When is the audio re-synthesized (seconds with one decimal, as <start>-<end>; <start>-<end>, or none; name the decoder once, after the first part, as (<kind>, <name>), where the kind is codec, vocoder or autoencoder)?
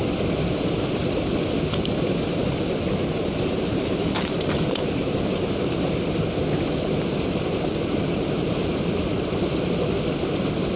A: 2.4-6.3 (vocoder, BigVGAN v2)